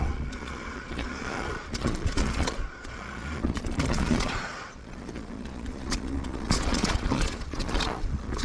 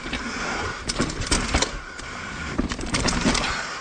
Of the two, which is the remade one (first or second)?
first